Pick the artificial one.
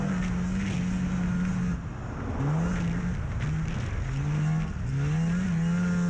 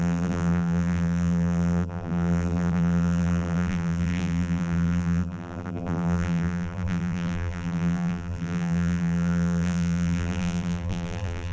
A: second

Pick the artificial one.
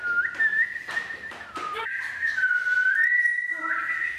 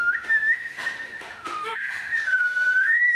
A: second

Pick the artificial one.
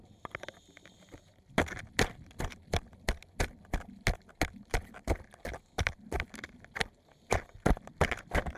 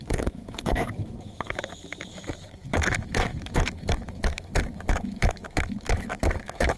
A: second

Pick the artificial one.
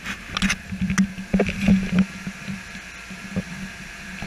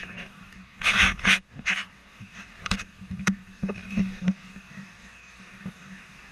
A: second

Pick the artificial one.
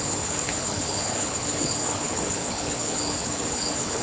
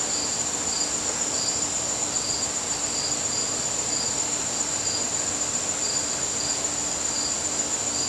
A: first